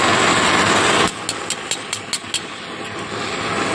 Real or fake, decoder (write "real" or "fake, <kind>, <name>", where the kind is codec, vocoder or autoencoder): real